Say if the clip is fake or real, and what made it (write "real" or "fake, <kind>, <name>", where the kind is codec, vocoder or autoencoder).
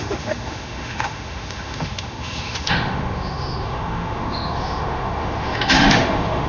fake, autoencoder, DAC-VAE